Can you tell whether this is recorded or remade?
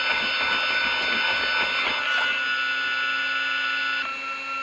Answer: recorded